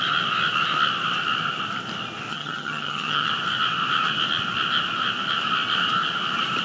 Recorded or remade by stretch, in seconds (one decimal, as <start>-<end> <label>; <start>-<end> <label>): 0.0-2.3 recorded; 2.3-3.3 remade; 3.3-6.6 recorded